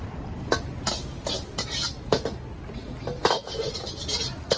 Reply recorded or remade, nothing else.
recorded